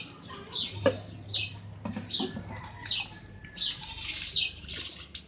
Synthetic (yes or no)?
no